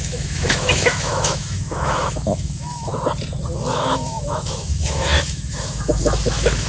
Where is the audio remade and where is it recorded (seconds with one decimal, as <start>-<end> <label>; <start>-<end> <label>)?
0.0-2.9 remade; 2.9-3.7 recorded; 3.7-6.7 remade